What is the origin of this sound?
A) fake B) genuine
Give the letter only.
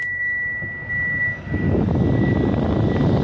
B